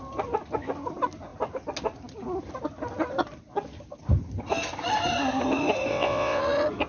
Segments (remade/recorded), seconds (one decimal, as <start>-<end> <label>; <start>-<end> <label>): 0.0-5.9 recorded; 5.9-6.4 remade; 6.4-6.9 recorded